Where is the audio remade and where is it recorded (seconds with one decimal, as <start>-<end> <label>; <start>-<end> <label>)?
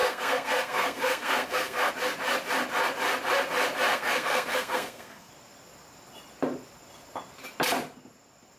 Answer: 0.0-1.9 remade; 1.9-3.9 recorded; 3.9-5.3 remade; 5.3-8.6 recorded